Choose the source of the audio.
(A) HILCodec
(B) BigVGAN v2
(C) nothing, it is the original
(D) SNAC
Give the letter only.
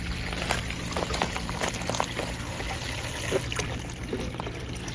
C